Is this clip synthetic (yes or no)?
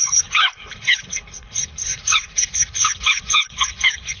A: yes